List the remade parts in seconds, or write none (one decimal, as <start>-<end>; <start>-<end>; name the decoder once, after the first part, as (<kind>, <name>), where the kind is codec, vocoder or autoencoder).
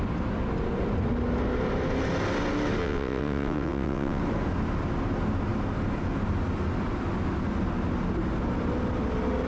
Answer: 2.8-4.2 (vocoder, WaveNeXt)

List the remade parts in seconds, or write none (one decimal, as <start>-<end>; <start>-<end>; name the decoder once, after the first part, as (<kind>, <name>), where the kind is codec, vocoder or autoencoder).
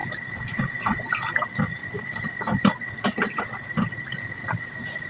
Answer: none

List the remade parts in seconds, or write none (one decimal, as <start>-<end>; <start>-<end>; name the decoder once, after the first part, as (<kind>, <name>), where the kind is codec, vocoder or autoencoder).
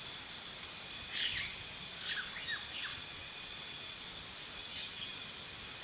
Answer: 2.9-4.0 (vocoder, WaveNeXt); 4.6-5.2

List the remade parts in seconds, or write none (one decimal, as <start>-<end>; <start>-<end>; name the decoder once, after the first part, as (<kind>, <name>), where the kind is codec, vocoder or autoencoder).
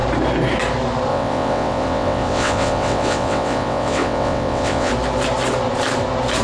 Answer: 1.1-4.9 (vocoder, WaveNeXt)